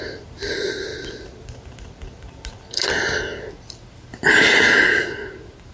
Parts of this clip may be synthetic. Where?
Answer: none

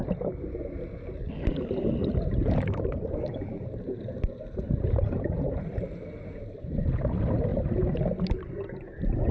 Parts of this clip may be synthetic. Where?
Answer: 2.0-7.1; 7.5-8.4

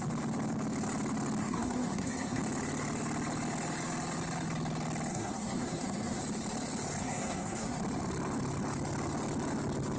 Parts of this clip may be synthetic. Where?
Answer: 1.4-2.4; 5.1-6.2; 7.0-7.8

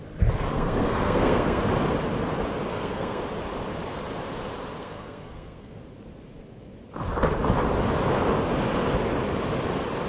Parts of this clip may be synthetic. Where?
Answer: 0.5-1.6; 2.7-3.2; 4.8-5.8

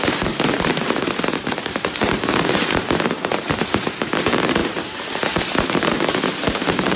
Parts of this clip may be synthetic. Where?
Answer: 0.0-7.0

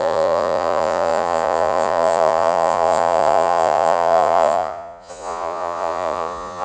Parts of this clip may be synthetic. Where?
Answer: 0.0-6.6

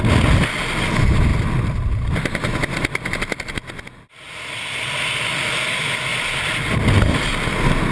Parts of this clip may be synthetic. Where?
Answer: none